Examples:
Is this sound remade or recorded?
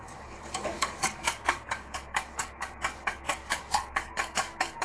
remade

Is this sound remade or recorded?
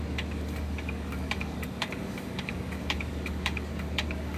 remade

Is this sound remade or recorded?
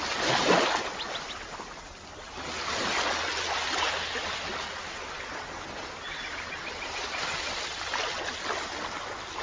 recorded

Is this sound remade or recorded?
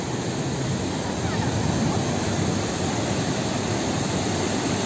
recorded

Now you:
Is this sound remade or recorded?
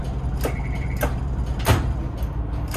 recorded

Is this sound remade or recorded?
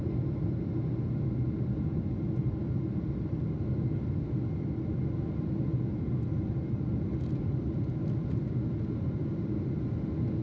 recorded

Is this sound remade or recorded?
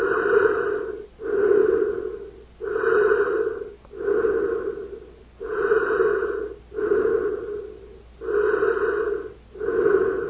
recorded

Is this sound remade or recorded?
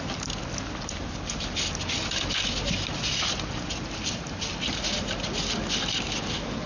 recorded